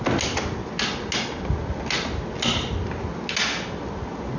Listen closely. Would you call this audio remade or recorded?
recorded